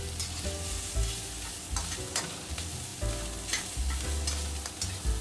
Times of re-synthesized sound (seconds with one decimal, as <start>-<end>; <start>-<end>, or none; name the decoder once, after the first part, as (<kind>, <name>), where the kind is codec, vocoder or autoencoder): none

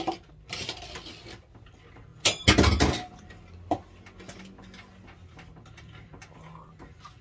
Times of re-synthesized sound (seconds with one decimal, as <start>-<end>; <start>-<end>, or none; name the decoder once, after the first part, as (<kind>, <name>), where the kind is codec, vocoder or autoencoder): none

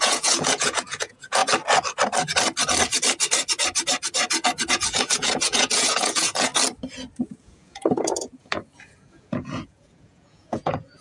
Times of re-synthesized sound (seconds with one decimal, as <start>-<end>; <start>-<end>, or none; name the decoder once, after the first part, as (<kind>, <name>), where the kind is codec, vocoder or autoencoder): 0.0-1.4 (vocoder, Vocos); 4.7-6.5; 7.2-11.0

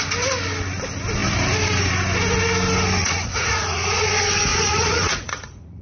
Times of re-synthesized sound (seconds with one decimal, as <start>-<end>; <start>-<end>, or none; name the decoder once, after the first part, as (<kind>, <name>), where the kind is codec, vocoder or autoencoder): 3.0-4.1 (vocoder, Vocos); 4.5-5.8

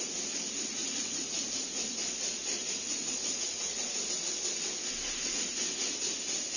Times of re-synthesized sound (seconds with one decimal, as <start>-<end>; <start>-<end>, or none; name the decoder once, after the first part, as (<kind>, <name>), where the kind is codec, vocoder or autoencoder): 0.8-4.0 (vocoder, Vocos)

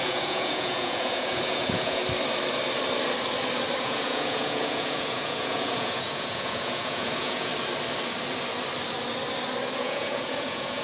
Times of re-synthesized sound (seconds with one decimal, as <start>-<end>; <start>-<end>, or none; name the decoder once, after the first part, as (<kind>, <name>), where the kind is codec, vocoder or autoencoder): 0.0-2.0 (vocoder, Vocos); 3.8-7.5; 9.8-10.8